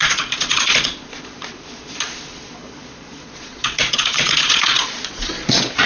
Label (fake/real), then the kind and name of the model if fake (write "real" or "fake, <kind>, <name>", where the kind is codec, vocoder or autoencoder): fake, vocoder, Vocos